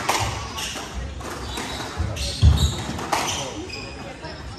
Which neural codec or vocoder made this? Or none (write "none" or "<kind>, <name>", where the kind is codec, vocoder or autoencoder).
none